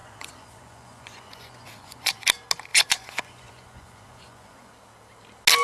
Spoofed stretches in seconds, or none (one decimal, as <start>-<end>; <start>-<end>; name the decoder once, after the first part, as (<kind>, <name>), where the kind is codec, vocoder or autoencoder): 0.0-2.2 (vocoder, Vocos); 2.7-4.7